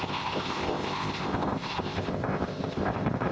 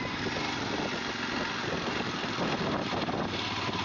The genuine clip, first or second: second